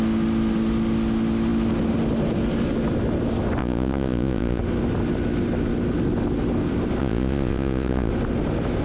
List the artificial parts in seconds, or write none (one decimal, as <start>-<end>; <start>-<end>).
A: 3.6-4.6; 7.0-8.1